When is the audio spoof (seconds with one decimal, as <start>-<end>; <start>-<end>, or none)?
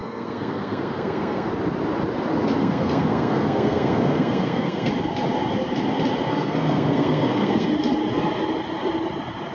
0.0-1.5; 2.6-4.9; 6.3-7.7